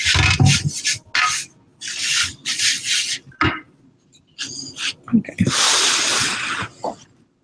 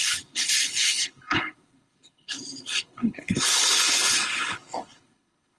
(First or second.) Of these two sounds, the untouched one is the first